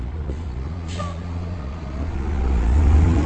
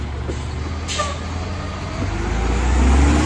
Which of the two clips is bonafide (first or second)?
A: second